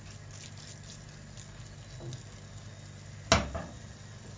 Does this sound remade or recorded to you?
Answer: recorded